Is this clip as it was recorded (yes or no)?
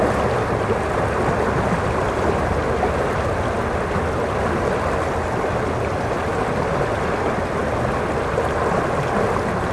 yes